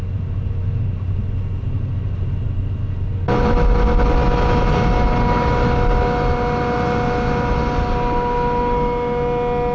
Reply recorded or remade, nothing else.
recorded